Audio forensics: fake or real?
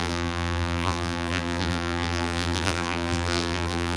fake